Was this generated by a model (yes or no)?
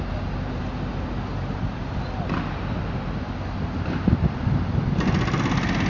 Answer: no